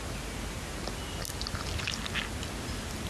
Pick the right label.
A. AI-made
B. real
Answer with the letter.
B